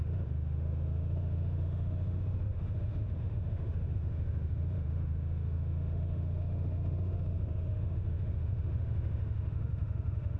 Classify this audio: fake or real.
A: fake